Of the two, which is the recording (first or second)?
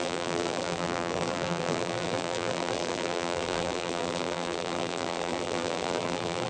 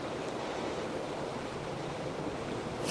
second